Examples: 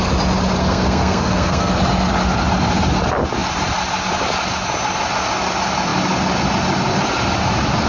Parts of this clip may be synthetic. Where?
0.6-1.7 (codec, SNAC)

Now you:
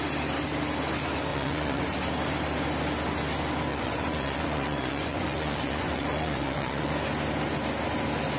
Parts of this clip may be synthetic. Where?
1.3-1.8 (vocoder, Vocos); 3.7-6.9

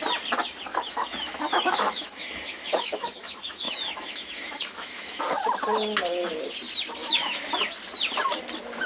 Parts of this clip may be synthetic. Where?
0.7-5.2 (autoencoder, DAC-VAE); 7.0-7.5